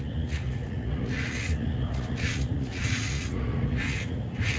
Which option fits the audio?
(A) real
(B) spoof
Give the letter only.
B